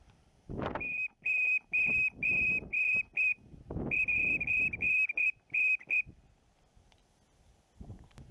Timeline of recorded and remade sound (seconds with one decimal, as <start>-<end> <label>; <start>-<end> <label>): 0.0-8.3 recorded